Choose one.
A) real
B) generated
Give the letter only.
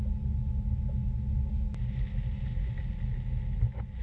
A